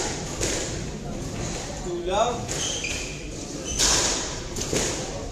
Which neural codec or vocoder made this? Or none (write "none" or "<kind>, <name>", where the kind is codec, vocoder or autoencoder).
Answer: none